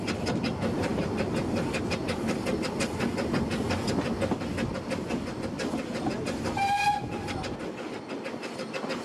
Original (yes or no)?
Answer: yes